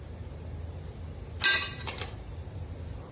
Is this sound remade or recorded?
recorded